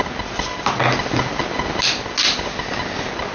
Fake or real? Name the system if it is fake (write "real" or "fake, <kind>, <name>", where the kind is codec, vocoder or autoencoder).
real